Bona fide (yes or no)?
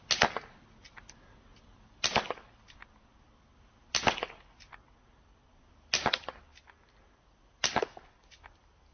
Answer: yes